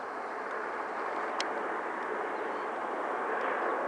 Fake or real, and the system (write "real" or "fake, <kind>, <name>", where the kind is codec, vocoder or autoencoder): real